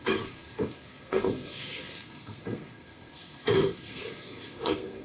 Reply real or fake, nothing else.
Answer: fake